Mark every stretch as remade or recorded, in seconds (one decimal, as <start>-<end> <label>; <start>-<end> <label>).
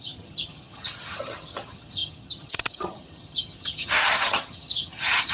0.0-5.3 remade